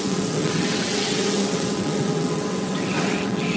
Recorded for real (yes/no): no